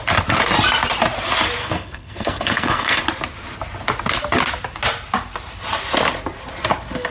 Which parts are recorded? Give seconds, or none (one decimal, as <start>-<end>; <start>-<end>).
0.0-1.6; 3.0-7.1